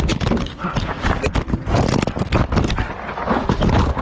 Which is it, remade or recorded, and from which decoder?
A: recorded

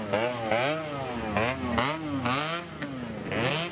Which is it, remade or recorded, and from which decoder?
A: recorded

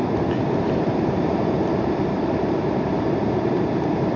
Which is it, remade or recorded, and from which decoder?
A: remade, vocoder, BigVGAN v2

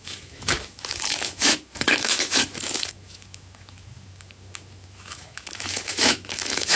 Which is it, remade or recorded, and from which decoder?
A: remade, autoencoder, DAC-VAE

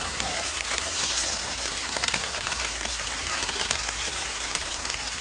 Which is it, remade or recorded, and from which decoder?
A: remade, codec, SNAC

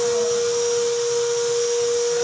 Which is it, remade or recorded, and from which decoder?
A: recorded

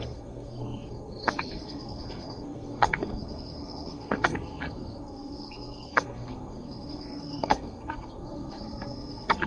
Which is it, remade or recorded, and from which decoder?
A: remade, codec, SNAC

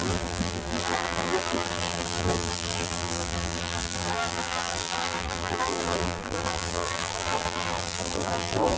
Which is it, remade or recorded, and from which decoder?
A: remade, vocoder, BigVGAN v2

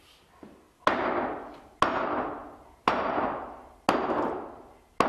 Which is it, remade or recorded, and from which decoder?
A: recorded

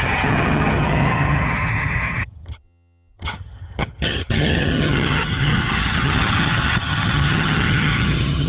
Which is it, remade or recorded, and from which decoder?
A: remade, vocoder, HiFi-GAN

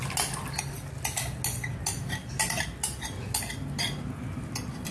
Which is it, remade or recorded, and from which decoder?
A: recorded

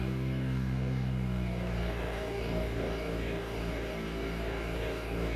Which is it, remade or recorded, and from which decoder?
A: remade, codec, DAC